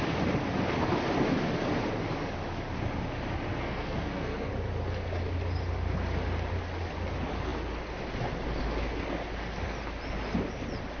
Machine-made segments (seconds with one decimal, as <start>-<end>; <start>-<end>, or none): 3.5-4.5